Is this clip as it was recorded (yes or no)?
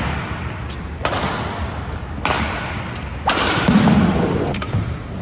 yes